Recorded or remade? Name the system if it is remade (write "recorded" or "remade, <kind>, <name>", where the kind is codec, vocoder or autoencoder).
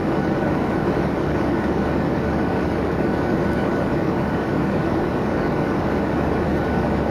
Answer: remade, codec, DAC